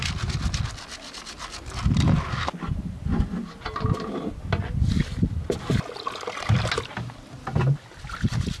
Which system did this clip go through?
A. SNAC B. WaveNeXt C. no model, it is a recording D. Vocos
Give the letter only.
C